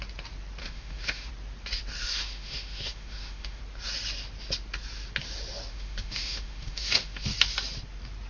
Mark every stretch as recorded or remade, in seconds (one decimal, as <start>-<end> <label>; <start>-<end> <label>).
0.0-0.6 recorded; 0.6-1.3 remade; 1.3-2.0 recorded; 2.0-3.6 remade; 3.6-5.7 recorded; 5.7-7.3 remade; 7.3-8.3 recorded